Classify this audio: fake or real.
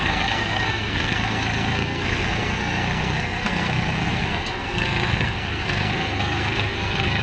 fake